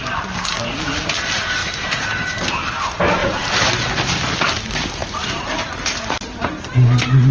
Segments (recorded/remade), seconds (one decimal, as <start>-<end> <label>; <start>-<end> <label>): 0.0-1.6 recorded; 1.6-2.5 remade; 2.5-3.2 recorded; 3.2-3.9 remade; 3.9-7.3 recorded